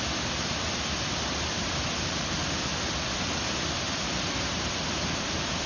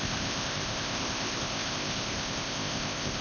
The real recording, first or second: first